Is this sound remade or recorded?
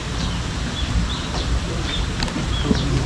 recorded